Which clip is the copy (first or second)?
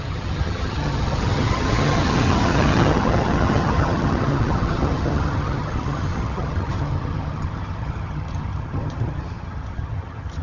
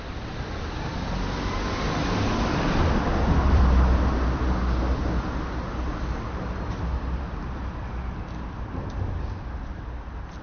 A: first